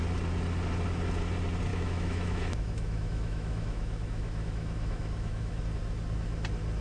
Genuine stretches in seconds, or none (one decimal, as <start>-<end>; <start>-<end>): 0.0-1.7; 5.6-6.8